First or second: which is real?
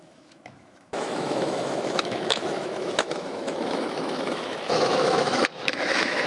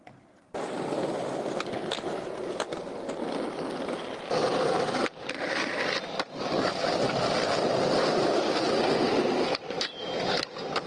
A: second